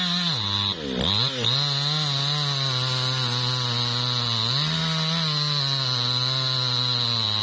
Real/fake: real